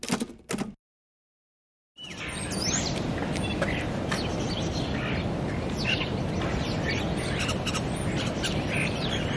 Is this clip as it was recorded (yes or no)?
yes